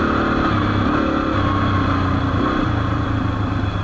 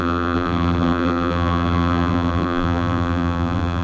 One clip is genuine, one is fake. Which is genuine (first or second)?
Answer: first